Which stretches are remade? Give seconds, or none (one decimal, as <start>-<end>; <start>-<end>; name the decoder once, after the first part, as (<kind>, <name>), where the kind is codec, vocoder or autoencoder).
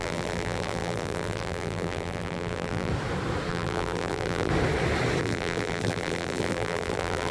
0.0-2.9 (vocoder, BigVGAN v2); 3.5-4.5; 5.2-7.3